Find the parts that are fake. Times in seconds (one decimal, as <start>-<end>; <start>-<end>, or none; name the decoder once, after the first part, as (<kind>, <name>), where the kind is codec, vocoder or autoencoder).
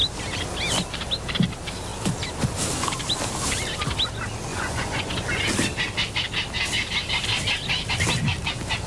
4.5-5.4 (vocoder, Vocos)